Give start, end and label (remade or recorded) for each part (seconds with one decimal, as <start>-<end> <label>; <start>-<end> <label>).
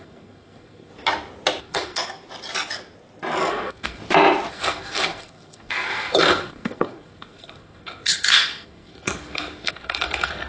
0.0-0.9 remade; 0.9-1.6 recorded; 1.6-2.0 remade; 2.0-3.5 recorded; 3.5-4.0 remade; 4.0-4.5 recorded; 4.5-10.5 remade